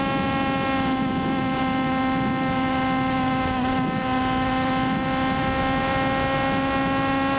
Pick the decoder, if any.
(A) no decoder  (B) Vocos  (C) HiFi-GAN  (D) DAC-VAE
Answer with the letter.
A